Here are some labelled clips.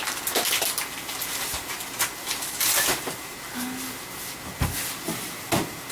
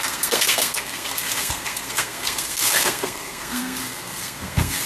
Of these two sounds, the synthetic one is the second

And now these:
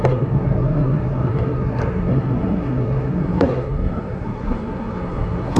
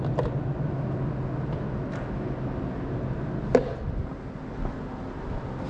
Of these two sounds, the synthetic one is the first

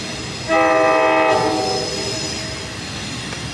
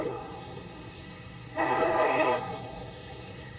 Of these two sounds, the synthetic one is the second